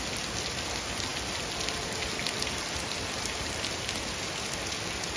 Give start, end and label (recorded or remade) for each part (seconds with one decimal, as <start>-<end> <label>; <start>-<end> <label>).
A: 0.0-5.2 recorded

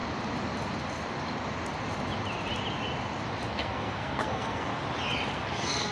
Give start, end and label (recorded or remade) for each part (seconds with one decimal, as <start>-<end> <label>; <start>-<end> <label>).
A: 0.0-3.5 recorded; 3.5-4.7 remade; 4.7-5.3 recorded; 5.3-5.9 remade

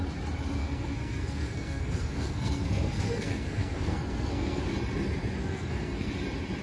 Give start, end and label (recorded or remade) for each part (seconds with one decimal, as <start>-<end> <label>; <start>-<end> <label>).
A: 0.0-0.6 recorded; 0.6-4.6 remade; 4.6-5.4 recorded; 5.4-6.1 remade; 6.1-6.6 recorded

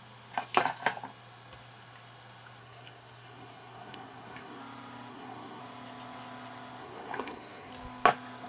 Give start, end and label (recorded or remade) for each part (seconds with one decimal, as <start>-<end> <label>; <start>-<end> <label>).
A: 0.0-2.6 recorded; 2.6-4.6 remade; 4.6-5.1 recorded; 5.1-5.6 remade; 5.6-6.8 recorded; 6.8-7.7 remade; 7.7-8.5 recorded

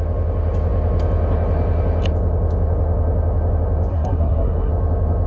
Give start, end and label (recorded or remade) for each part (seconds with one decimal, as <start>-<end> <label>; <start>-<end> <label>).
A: 0.0-3.9 recorded; 3.9-4.7 remade; 4.7-5.3 recorded

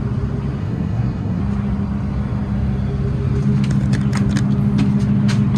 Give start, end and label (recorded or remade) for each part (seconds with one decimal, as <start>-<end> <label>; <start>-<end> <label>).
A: 0.0-0.6 recorded; 0.6-1.4 remade; 1.4-5.6 recorded